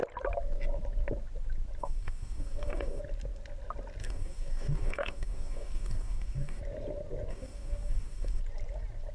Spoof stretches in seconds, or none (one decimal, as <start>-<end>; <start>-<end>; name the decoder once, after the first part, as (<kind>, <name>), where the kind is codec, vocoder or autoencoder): 1.8-3.0 (codec, DAC); 4.0-6.6; 7.3-8.4